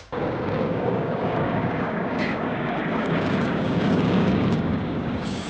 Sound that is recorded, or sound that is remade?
remade